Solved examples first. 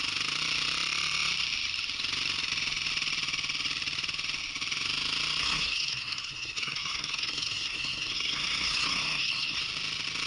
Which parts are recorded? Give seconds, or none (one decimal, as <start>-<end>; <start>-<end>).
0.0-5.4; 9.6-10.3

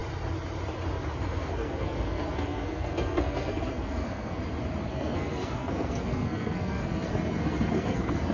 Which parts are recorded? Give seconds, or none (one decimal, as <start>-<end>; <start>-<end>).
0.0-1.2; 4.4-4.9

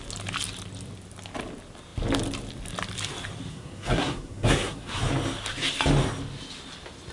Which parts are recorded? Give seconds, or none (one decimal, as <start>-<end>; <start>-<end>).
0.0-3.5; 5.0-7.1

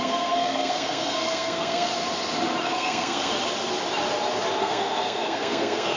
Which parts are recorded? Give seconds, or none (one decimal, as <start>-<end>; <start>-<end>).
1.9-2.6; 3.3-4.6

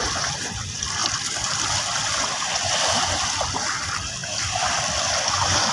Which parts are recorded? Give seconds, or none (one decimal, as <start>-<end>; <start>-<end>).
0.0-5.7

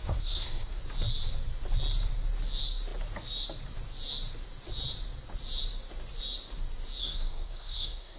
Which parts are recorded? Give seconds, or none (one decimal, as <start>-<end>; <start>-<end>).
0.8-7.0

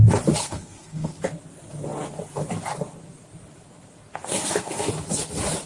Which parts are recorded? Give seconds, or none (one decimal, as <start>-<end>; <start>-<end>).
0.0-0.4; 1.2-4.3; 4.9-5.7